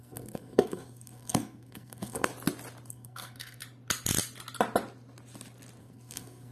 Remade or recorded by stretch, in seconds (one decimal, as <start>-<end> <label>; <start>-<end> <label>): 0.0-2.3 remade; 2.3-2.9 recorded; 2.9-3.6 remade; 3.6-5.8 recorded; 5.8-6.5 remade